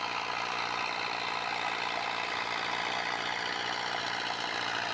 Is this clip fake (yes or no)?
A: no